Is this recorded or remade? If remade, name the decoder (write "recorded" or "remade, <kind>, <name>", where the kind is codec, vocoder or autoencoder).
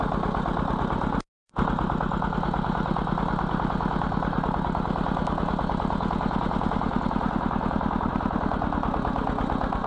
recorded